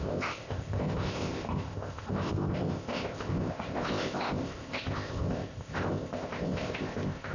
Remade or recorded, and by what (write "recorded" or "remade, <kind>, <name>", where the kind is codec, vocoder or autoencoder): remade, codec, ZipCodec